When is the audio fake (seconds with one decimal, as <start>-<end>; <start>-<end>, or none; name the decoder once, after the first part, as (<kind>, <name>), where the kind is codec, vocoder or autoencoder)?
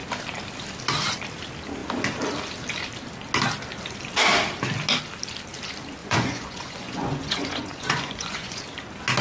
6.0-8.6 (vocoder, Vocos)